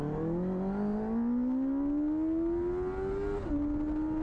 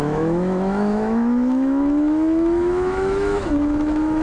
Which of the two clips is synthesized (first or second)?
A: second